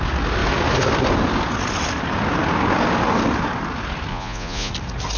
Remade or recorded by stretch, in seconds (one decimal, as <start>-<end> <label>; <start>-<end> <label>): 0.0-4.1 recorded; 4.1-4.7 remade; 4.7-5.2 recorded